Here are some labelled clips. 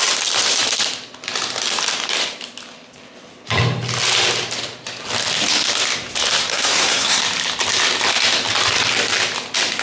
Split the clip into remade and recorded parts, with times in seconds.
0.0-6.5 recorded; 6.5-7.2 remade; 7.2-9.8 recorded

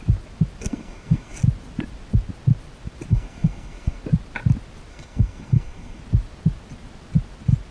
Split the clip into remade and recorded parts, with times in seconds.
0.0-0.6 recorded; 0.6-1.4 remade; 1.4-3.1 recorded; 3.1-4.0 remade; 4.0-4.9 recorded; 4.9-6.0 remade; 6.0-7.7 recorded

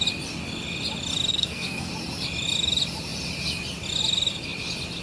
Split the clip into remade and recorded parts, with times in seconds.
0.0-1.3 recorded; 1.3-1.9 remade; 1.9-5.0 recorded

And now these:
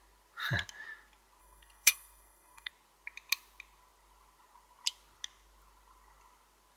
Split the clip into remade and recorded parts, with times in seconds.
0.0-1.4 recorded; 1.4-2.7 remade; 2.7-6.8 recorded

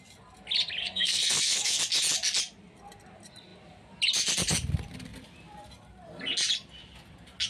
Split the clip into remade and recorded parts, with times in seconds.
0.0-0.8 recorded; 0.8-1.8 remade; 1.8-7.5 recorded

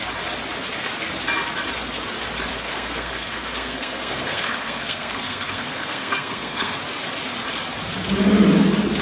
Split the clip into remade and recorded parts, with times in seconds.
0.0-2.5 recorded; 2.5-6.8 remade; 6.8-9.0 recorded

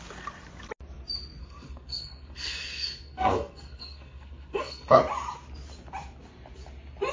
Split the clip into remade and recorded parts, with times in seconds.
0.0-1.4 recorded; 1.4-5.0 remade; 5.0-7.1 recorded